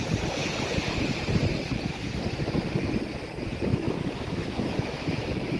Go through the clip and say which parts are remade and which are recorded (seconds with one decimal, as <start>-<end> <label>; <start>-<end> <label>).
0.0-3.7 recorded; 3.7-5.6 remade

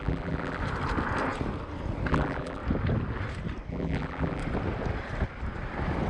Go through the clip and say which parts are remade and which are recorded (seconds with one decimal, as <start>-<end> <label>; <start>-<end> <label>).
0.0-0.6 remade; 0.6-2.1 recorded; 2.1-2.6 remade; 2.6-3.7 recorded; 3.7-4.4 remade; 4.4-6.1 recorded

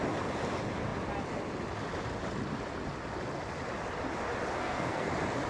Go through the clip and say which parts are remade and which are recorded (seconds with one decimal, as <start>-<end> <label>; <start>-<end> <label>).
0.0-4.6 recorded; 4.6-5.1 remade; 5.1-5.5 recorded

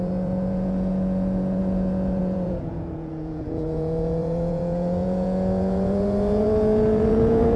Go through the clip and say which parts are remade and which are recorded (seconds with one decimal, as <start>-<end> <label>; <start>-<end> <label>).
0.0-7.6 remade

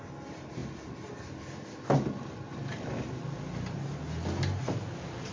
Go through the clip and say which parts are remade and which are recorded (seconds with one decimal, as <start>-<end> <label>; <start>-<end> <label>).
0.0-5.3 recorded